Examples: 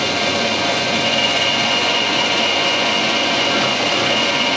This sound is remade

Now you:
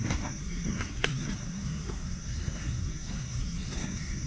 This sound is remade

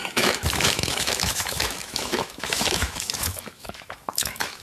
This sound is remade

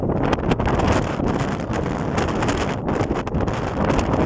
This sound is recorded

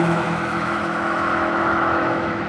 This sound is remade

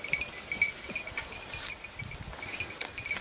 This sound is recorded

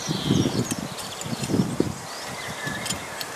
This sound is recorded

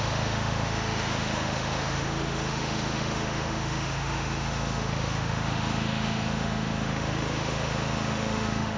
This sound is remade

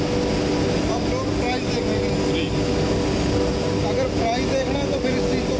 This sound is recorded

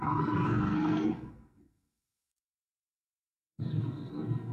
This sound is remade